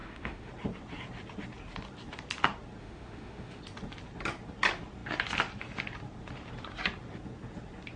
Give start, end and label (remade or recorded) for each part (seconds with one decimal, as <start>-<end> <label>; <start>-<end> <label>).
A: 0.0-0.5 remade; 0.5-2.8 recorded; 2.8-3.6 remade; 3.6-8.0 recorded